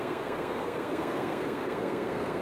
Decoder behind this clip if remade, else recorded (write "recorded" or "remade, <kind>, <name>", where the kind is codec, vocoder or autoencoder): remade, codec, SNAC